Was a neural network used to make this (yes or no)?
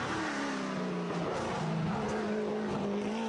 no